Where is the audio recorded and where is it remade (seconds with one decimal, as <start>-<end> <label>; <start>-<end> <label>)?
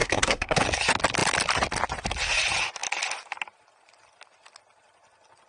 0.0-0.6 remade; 0.6-5.5 recorded